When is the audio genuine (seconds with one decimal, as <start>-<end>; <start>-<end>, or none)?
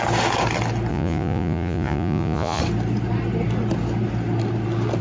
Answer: 0.0-0.9; 2.6-5.0